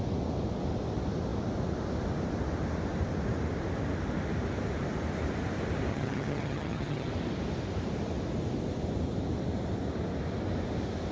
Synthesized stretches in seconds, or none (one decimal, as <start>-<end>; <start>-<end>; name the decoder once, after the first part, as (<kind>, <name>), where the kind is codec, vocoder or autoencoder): 5.9-7.1 (vocoder, HiFi-GAN)